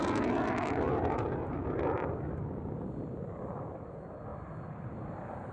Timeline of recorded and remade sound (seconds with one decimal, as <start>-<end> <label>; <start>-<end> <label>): 0.0-5.5 recorded